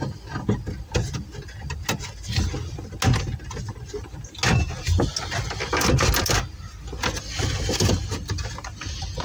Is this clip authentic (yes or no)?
yes